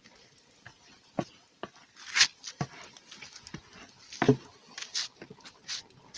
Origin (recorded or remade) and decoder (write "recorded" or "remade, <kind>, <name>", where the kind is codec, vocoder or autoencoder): recorded